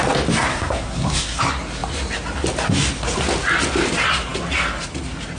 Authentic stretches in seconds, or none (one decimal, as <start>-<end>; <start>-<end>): 0.0-0.5; 1.4-5.4